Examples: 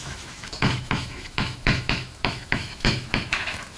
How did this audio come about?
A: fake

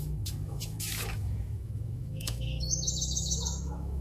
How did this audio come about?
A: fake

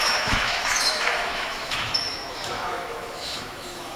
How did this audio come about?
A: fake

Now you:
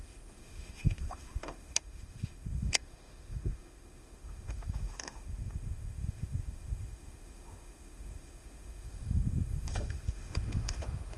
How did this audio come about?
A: fake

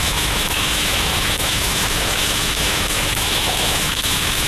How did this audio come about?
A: fake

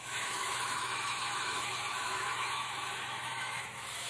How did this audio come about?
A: fake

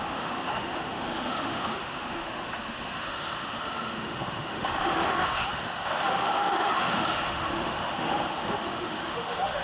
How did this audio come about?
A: fake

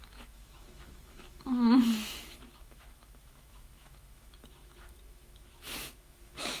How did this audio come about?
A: fake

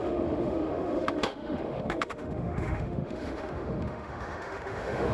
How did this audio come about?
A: fake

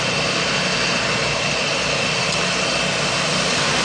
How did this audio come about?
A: real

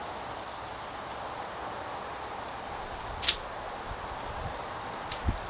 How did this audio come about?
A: real